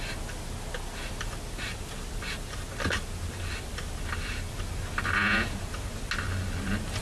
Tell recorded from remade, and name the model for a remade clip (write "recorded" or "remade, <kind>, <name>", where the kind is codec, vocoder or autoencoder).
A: recorded